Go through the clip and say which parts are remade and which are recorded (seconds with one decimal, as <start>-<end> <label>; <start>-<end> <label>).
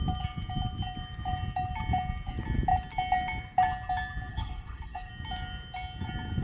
0.0-4.3 recorded; 4.3-5.1 remade; 5.1-6.4 recorded